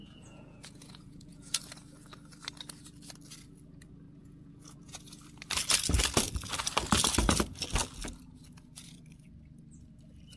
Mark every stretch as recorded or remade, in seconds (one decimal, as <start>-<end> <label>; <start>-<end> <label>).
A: 0.0-1.6 remade; 1.6-4.2 recorded; 4.2-5.2 remade; 5.2-10.4 recorded